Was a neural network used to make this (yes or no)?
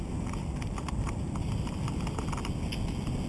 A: no